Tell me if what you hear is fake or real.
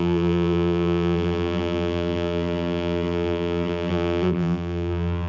fake